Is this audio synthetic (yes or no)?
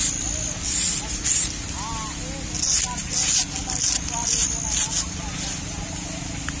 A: no